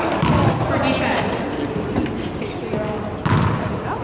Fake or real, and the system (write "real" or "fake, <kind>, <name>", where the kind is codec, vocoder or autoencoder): real